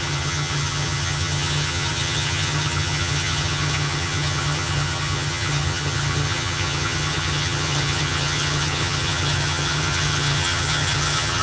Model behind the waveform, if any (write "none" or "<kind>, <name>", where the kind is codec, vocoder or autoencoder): vocoder, HiFi-GAN